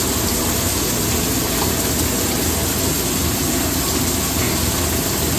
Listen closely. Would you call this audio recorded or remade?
recorded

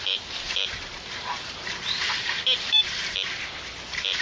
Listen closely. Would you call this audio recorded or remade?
remade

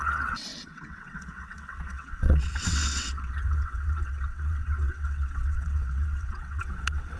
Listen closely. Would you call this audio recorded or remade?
remade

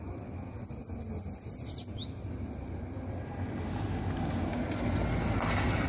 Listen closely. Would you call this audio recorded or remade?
recorded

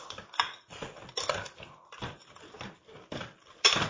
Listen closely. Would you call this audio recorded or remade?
recorded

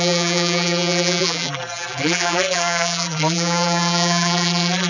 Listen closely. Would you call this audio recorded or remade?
remade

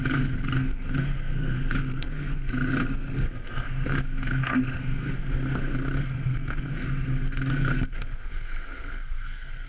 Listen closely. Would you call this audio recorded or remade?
remade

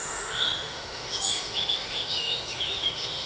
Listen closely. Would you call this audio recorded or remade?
remade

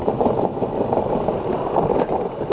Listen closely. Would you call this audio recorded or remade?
recorded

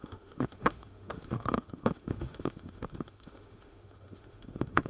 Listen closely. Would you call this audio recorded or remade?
remade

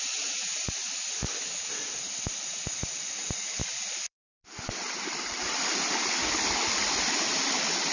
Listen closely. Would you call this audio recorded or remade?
remade